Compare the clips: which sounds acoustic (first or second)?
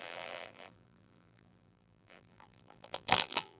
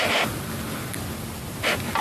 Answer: second